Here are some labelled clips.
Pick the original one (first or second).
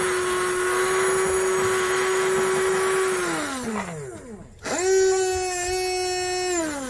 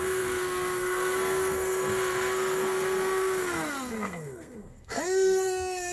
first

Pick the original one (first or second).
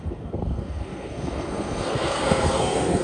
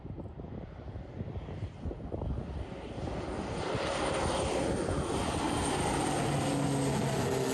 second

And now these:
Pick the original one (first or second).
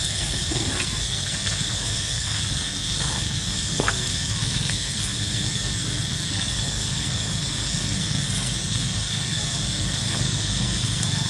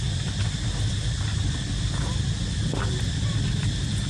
second